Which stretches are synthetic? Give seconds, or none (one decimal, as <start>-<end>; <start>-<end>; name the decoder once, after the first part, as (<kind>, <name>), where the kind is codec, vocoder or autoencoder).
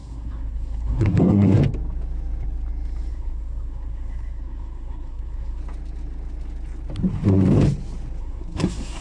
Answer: 0.0-1.6 (codec, SNAC); 3.1-5.6; 8.2-9.0